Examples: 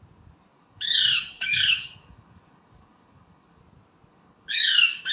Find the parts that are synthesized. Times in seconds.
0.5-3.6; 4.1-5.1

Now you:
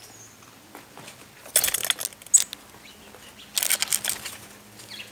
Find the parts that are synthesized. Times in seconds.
none

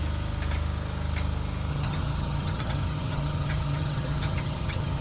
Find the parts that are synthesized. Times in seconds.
1.7-5.0

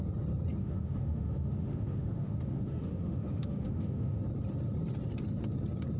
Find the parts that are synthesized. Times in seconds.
0.6-4.2